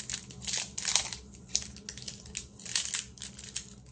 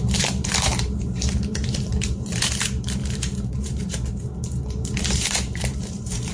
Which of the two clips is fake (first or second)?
second